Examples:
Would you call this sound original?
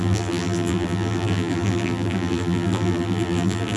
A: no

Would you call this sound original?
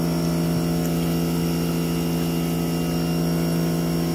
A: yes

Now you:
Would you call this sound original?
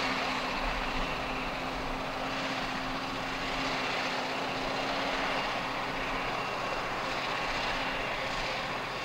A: yes